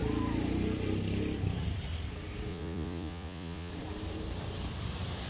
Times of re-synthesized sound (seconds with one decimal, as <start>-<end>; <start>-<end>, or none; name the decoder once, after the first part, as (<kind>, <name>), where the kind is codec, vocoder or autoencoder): 2.5-3.7 (vocoder, Vocos)